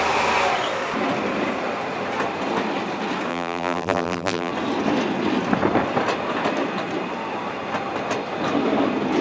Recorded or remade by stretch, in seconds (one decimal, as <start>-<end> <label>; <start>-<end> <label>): 0.0-3.3 recorded; 3.3-4.5 remade; 4.5-9.2 recorded